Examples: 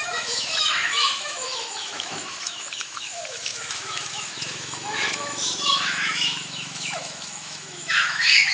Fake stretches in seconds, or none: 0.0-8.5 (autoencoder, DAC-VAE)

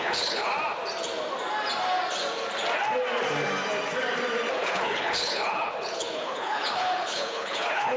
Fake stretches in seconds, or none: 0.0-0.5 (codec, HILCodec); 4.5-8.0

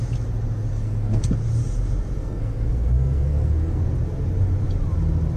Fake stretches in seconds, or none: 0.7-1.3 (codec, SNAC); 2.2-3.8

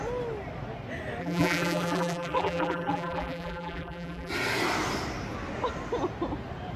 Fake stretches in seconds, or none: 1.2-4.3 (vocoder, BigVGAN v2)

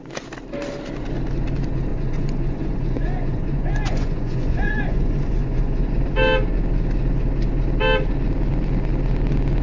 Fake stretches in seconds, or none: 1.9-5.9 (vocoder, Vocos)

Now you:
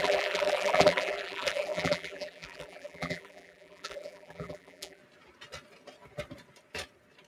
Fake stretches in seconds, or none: 0.0-5.0 (vocoder, BigVGAN v2)

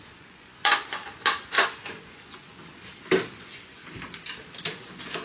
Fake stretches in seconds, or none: 0.0-2.6 (vocoder, Vocos); 3.3-3.8; 4.7-5.2